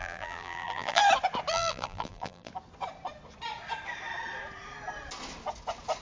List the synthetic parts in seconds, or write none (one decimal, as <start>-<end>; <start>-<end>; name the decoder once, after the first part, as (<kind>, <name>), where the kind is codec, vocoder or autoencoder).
0.0-1.0 (vocoder, BigVGAN v2); 1.5-2.5